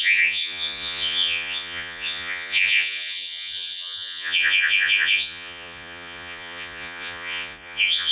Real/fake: fake